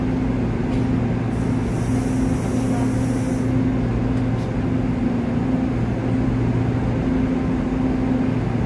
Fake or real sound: real